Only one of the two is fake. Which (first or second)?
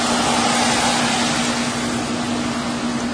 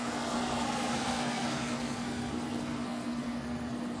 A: second